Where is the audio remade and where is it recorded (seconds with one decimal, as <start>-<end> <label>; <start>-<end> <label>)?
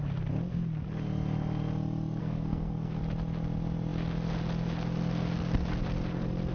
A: 0.0-2.2 recorded; 2.2-3.0 remade; 3.0-6.5 recorded